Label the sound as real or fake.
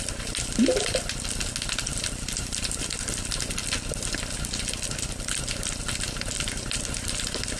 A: real